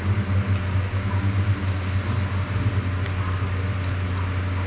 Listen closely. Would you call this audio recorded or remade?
recorded